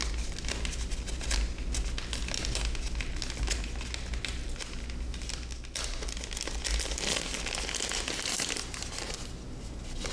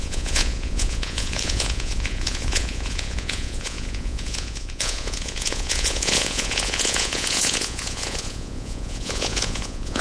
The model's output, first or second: second